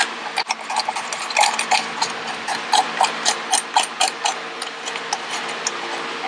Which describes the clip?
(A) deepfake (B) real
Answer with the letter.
B